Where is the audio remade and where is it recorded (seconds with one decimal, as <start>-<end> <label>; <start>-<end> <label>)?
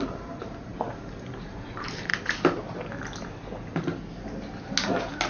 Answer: 0.0-2.1 remade; 2.1-5.3 recorded